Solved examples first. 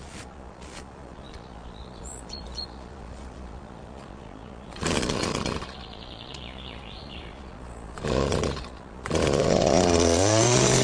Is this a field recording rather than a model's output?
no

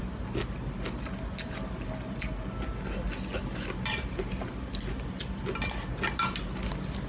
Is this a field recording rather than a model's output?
yes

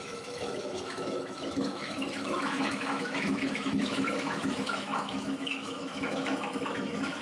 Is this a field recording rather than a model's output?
no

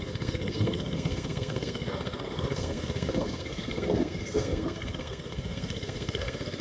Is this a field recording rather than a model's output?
no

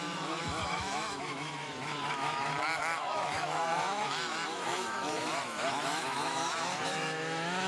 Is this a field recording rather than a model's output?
no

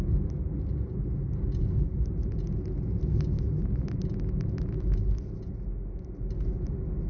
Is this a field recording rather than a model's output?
yes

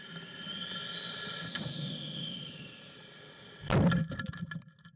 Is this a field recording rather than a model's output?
yes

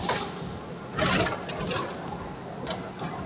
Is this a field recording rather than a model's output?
yes